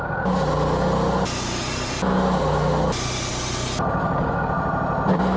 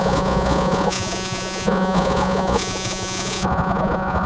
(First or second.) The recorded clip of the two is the first